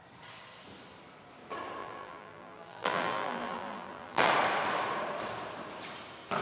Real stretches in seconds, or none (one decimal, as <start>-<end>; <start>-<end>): 0.0-1.8; 4.3-6.4

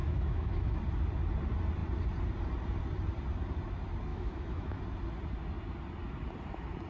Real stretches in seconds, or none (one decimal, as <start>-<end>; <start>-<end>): 0.8-4.1; 4.8-6.9

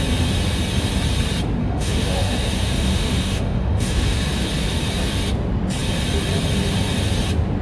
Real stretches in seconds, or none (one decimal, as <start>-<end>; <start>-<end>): 0.0-1.6; 4.2-7.6